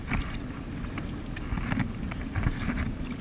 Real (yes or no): yes